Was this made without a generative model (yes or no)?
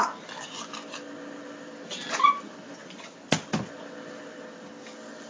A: yes